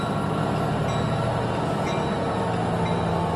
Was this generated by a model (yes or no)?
no